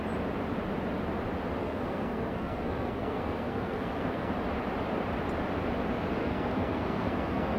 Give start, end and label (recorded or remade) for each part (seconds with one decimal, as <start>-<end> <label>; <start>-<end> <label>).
0.0-1.6 recorded; 1.6-4.3 remade; 4.3-6.2 recorded; 6.2-7.6 remade